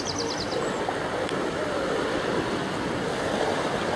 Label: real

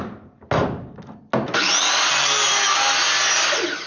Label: real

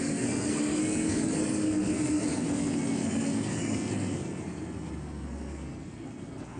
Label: fake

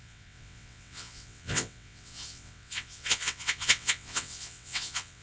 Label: fake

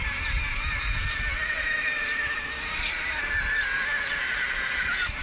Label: real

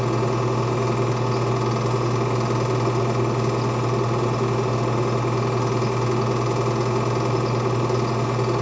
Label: real